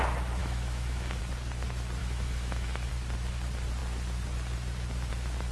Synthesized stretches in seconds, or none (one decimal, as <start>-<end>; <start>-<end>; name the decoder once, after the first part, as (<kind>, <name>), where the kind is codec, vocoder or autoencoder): 0.4-1.2 (autoencoder, DAC-VAE); 2.0-2.9

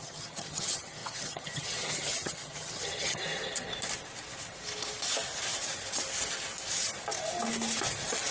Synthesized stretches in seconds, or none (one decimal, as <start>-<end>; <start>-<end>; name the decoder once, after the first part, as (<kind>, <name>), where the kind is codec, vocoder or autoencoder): 0.0-3.2 (vocoder, HiFi-GAN)

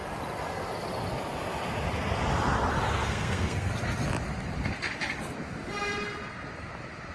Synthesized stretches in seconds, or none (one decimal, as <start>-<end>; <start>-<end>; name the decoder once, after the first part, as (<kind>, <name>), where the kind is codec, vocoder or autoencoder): 3.0-3.7 (codec, SNAC)